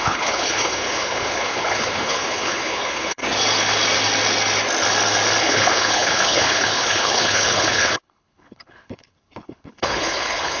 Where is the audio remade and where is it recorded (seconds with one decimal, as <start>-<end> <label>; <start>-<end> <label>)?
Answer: 0.0-3.2 remade; 3.2-5.4 recorded; 5.4-10.6 remade